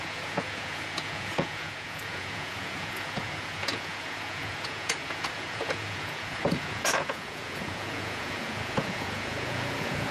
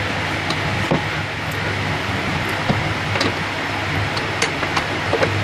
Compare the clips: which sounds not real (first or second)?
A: first